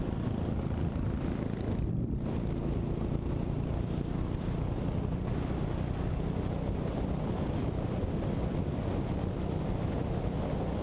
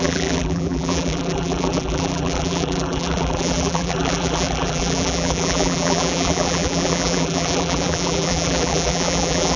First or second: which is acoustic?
first